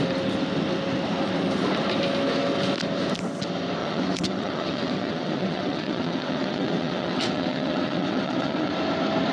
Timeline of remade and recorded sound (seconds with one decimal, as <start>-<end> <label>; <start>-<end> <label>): 0.0-3.8 recorded; 3.8-8.7 remade; 8.7-9.3 recorded